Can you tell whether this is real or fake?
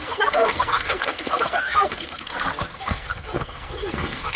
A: fake